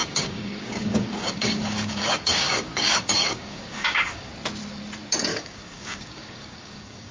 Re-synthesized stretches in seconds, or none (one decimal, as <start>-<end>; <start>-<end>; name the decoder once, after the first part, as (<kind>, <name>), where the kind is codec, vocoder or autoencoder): 0.0-4.3 (codec, DAC); 5.3-7.1